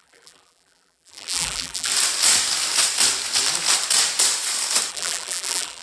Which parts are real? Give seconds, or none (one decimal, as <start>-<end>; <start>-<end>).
1.9-4.9